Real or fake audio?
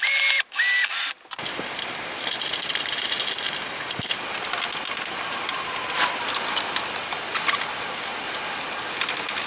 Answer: real